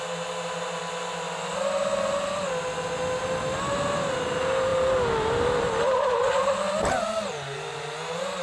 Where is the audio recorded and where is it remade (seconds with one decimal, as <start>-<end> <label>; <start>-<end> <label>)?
0.0-8.4 recorded